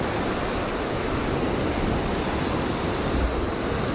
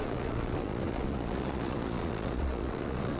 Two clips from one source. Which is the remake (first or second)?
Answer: second